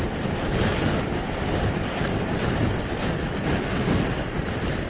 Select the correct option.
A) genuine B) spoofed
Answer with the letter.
A